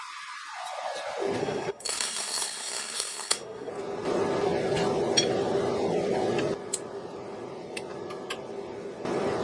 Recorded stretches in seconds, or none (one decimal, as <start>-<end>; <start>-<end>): 0.0-1.4; 3.7-9.4